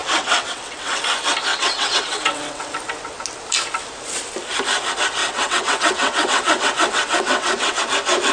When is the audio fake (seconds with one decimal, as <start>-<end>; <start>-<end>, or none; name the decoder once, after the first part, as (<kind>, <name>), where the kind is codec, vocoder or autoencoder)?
0.0-1.0 (vocoder, WaveNeXt); 1.5-2.7; 5.2-7.8